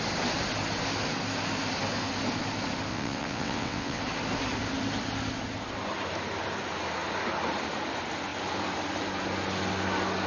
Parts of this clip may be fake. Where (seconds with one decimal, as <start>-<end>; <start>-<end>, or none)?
2.9-4.0